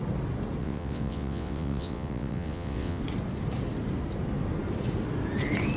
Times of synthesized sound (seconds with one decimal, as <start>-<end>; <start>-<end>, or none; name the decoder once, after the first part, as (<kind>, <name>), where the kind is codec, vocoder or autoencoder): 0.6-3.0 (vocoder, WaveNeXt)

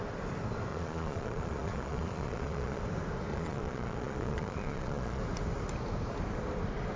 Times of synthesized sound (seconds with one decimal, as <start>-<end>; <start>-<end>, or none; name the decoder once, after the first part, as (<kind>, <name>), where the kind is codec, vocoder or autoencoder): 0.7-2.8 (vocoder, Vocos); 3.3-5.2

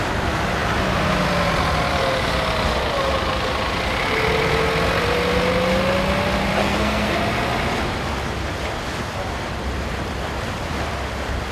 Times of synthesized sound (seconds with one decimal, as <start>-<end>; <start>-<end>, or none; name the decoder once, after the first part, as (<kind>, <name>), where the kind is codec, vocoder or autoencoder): 6.6-7.2 (codec, SNAC)

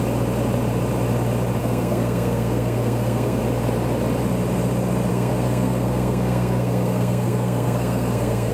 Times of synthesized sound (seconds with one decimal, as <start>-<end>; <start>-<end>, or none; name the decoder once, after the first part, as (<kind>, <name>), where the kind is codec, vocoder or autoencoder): 1.6-3.4 (codec, SNAC); 5.1-8.5

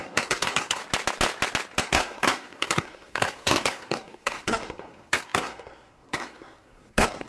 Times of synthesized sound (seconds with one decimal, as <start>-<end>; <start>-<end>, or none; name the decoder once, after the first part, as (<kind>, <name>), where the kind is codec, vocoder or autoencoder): 0.0-0.8 (codec, SNAC); 1.8-7.3

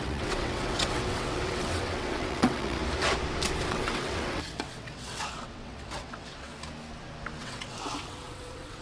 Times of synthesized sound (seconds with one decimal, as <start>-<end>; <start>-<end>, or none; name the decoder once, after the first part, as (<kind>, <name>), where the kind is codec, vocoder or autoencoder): 0.0-2.8 (vocoder, WaveNeXt); 3.7-6.5; 7.4-8.8

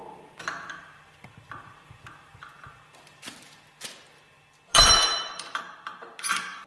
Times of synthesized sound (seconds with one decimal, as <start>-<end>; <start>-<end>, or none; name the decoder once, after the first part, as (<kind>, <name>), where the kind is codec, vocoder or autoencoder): 4.7-5.6 (vocoder, BigVGAN v2)

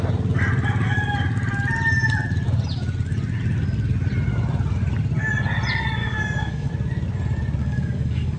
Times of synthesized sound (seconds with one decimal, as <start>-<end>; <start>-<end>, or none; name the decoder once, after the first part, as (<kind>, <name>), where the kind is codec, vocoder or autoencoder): 6.0-6.7 (codec, DAC); 7.6-8.4